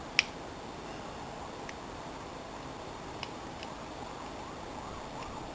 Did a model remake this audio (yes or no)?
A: no